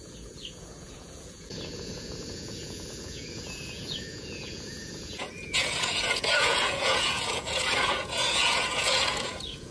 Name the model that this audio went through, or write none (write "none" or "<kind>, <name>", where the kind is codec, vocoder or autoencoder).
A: vocoder, Vocos